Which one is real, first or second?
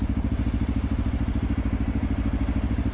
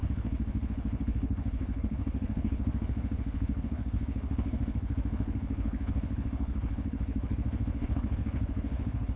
first